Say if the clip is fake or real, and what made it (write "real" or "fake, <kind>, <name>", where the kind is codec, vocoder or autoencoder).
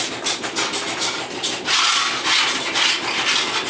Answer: real